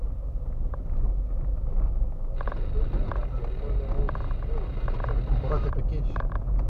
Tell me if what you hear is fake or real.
real